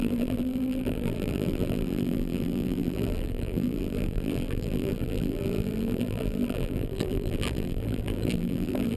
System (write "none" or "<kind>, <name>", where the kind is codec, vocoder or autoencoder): vocoder, BigVGAN v2